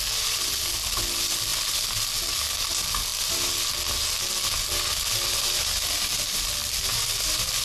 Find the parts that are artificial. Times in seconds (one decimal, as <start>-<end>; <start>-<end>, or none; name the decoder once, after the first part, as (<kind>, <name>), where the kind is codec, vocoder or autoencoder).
1.5-2.1 (vocoder, BigVGAN v2); 4.9-5.6; 6.6-7.6